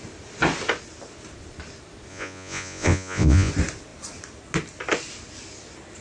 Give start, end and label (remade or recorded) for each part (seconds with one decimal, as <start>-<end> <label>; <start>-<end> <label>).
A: 0.0-2.1 recorded; 2.1-3.5 remade; 3.5-6.0 recorded